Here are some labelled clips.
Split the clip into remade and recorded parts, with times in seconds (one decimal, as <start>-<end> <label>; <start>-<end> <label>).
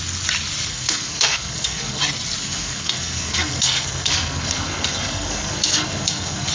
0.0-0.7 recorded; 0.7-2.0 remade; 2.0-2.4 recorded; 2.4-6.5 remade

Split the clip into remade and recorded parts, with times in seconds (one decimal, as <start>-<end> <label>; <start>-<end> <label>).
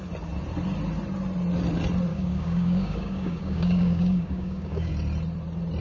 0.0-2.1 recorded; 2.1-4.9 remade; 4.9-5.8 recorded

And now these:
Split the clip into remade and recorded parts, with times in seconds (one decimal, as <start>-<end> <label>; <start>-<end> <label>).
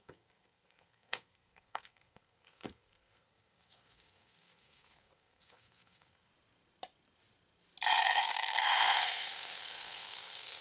0.0-6.3 remade; 6.3-8.0 recorded; 8.0-10.6 remade